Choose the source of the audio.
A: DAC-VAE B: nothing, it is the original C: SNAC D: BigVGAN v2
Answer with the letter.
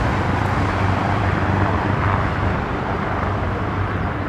D